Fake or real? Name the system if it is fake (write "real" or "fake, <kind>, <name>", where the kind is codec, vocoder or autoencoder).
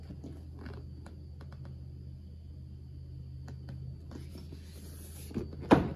real